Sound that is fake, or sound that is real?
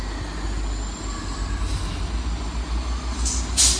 real